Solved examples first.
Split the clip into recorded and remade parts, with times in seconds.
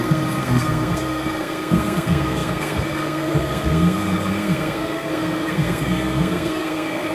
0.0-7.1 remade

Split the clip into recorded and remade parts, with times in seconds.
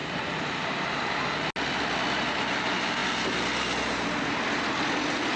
0.0-1.3 remade; 1.3-5.4 recorded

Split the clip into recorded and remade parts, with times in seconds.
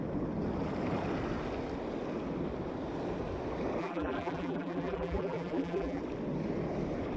0.0-3.8 recorded; 3.8-6.0 remade; 6.0-7.2 recorded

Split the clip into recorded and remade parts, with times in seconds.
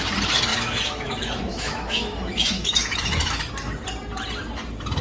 0.0-0.5 recorded; 0.5-3.5 remade; 3.5-5.0 recorded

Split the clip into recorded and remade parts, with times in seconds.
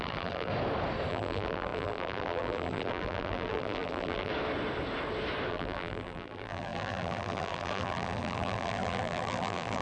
0.0-0.5 remade; 0.5-1.1 recorded; 1.1-4.3 remade; 4.3-5.5 recorded; 5.5-9.8 remade